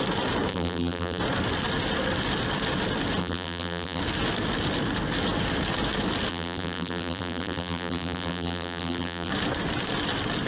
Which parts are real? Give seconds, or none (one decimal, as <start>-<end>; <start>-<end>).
0.0-0.5; 1.2-3.2; 4.0-6.3; 9.3-10.5